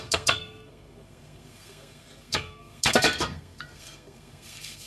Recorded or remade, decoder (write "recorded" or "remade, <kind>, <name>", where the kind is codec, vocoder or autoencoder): remade, codec, SNAC